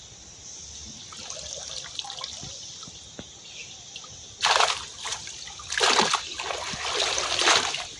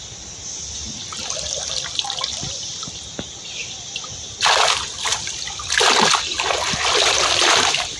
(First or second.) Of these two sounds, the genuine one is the first